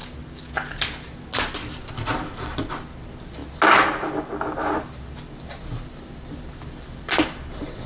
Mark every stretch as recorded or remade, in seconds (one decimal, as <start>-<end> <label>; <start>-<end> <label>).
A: 0.0-1.7 recorded; 1.7-3.4 remade; 3.4-6.1 recorded; 6.1-7.9 remade